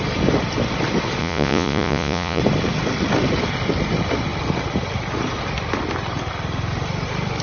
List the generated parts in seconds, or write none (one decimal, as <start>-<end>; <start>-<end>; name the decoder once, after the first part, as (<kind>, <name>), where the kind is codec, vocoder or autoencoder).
1.2-2.4 (vocoder, Vocos)